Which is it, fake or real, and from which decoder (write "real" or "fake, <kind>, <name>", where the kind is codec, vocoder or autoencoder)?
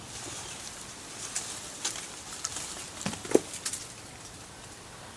real